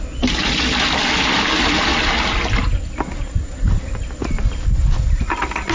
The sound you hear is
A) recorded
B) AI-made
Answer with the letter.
A